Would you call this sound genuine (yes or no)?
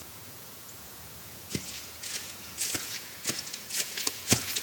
no